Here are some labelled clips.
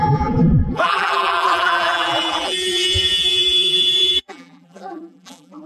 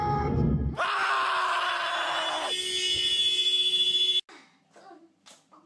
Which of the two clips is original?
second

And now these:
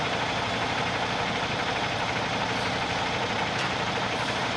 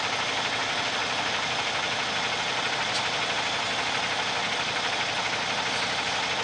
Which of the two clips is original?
second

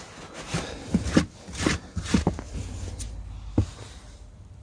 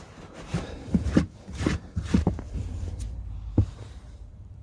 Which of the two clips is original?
first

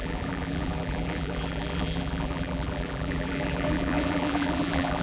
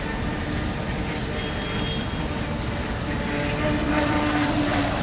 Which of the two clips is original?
second